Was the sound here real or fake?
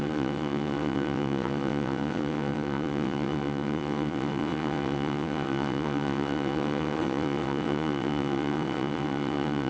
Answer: fake